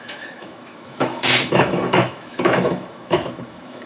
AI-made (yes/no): yes